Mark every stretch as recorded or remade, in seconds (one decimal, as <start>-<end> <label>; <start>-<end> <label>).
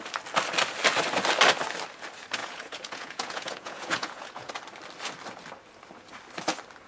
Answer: 0.0-2.4 recorded; 2.4-4.5 remade; 4.5-6.9 recorded